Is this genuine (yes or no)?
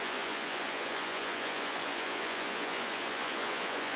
no